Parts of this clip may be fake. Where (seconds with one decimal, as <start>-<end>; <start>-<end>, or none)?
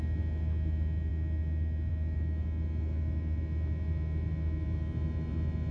none